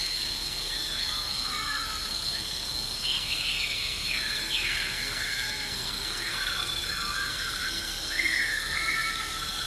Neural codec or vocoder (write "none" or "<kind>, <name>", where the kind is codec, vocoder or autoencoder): codec, SNAC